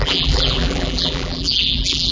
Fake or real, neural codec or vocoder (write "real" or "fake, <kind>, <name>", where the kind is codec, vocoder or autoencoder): fake, vocoder, BigVGAN v2